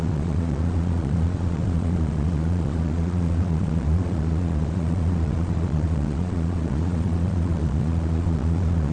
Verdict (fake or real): fake